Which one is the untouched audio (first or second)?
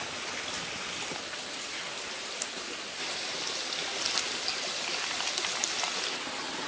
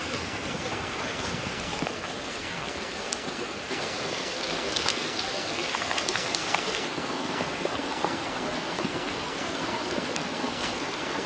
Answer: first